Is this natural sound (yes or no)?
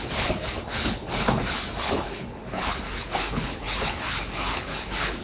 no